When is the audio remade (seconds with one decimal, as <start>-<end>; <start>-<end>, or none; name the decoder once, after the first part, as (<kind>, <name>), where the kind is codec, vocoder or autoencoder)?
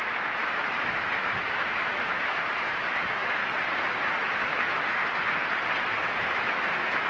0.0-3.4 (autoencoder, DAC-VAE); 4.3-5.0; 5.8-7.1